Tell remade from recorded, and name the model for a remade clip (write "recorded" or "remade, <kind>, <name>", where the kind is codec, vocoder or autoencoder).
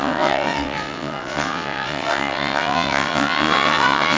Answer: remade, vocoder, WaveNeXt